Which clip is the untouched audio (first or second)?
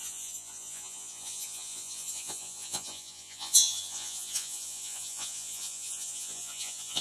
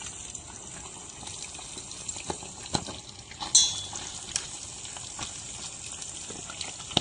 second